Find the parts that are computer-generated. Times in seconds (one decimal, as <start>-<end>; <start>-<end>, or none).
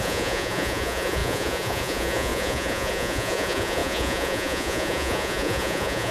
0.0-6.1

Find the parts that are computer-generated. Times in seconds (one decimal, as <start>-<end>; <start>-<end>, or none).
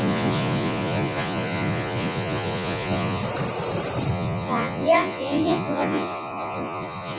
0.0-3.2; 4.1-7.2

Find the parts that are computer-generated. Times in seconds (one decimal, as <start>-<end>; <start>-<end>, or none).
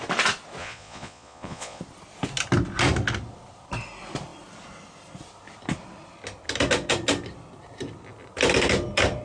0.6-1.8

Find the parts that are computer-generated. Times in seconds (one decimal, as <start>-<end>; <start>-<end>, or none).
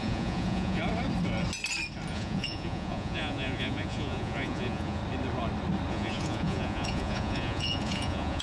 0.0-0.8; 2.1-5.0; 5.9-8.4